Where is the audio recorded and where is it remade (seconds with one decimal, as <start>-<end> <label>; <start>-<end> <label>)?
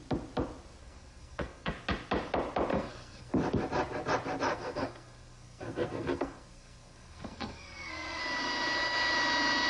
0.0-0.8 recorded; 0.8-1.7 remade; 1.7-2.7 recorded; 2.7-3.3 remade; 3.3-4.5 recorded; 4.5-8.2 remade; 8.2-9.7 recorded